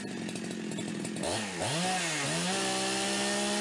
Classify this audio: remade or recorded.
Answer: recorded